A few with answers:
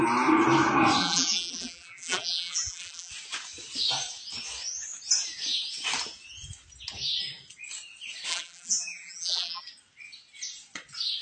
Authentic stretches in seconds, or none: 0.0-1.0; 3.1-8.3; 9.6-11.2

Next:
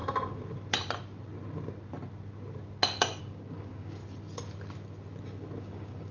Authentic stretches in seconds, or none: 0.0-3.2; 4.0-5.6

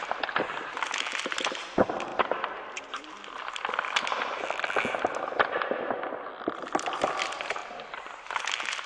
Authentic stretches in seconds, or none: 0.0-8.9

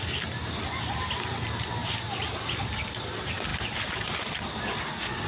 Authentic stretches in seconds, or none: 0.0-5.3

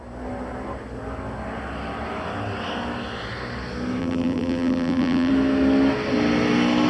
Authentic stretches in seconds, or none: 0.0-4.0; 5.3-6.9